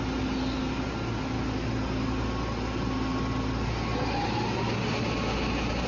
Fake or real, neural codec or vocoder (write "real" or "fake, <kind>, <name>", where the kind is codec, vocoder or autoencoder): real